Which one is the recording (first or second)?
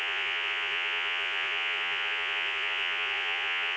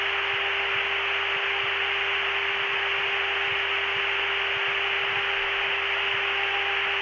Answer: second